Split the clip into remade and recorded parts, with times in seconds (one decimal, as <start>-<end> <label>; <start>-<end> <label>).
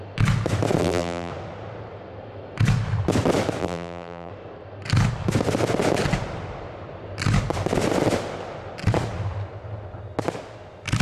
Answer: 0.0-0.8 recorded; 0.8-1.3 remade; 1.3-3.6 recorded; 3.6-4.3 remade; 4.3-11.0 recorded